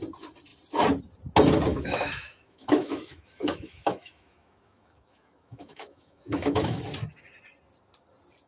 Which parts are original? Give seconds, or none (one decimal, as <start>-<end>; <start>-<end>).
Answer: 0.0-1.7; 6.8-8.5